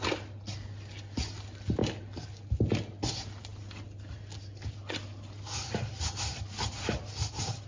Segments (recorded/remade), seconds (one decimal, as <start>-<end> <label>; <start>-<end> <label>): 0.0-7.7 recorded